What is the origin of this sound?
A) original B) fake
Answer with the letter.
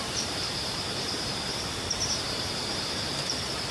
B